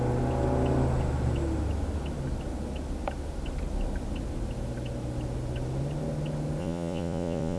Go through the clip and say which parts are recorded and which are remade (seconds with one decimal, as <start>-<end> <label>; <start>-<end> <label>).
0.0-6.6 recorded; 6.6-7.6 remade